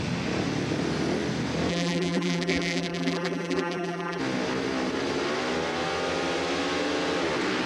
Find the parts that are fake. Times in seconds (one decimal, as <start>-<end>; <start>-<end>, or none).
1.7-4.2